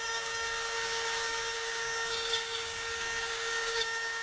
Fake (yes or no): yes